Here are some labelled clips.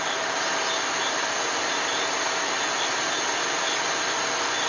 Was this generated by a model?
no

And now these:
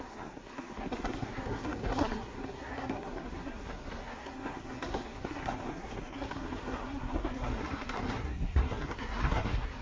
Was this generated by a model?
yes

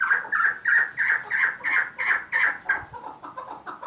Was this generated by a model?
no